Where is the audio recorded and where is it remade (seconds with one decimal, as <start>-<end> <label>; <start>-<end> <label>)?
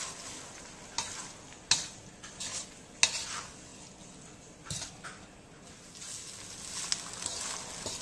0.0-8.0 recorded